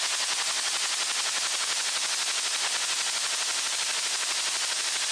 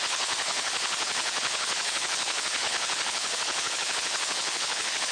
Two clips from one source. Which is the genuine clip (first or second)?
first